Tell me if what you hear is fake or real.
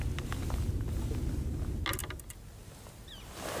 real